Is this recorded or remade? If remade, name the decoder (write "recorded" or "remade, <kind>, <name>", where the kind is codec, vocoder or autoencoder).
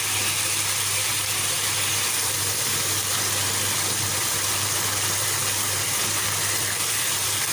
remade, vocoder, BigVGAN v2